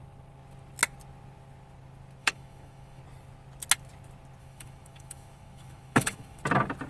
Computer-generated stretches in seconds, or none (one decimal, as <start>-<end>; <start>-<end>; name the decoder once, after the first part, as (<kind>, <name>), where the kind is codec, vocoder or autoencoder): 2.2-3.0 (autoencoder, DAC-VAE); 4.4-6.4